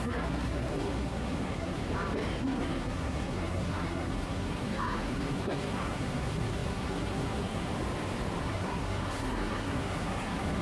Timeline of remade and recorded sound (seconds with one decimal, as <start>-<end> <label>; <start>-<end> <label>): 0.0-1.8 remade; 1.8-2.4 recorded; 2.4-7.7 remade; 7.7-8.4 recorded; 8.4-10.6 remade